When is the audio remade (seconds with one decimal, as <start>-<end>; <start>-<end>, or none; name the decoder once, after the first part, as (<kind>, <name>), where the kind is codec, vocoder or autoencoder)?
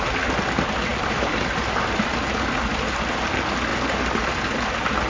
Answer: 0.9-2.0 (vocoder, BigVGAN v2)